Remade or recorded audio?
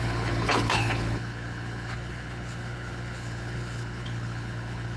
remade